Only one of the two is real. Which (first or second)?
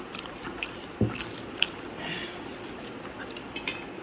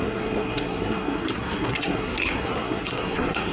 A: first